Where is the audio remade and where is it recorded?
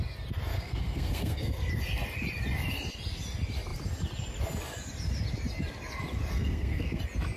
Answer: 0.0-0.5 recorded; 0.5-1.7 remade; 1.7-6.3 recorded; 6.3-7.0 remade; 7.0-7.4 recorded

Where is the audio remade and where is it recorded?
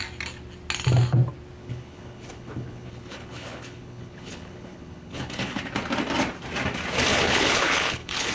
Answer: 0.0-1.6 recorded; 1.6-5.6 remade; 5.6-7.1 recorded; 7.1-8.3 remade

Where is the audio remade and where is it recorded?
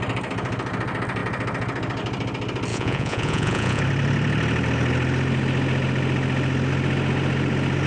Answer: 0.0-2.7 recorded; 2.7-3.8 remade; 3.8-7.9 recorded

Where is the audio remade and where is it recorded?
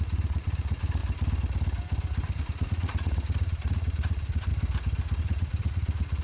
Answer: 0.0-1.0 remade; 1.0-2.4 recorded; 2.4-4.5 remade; 4.5-5.2 recorded; 5.2-6.2 remade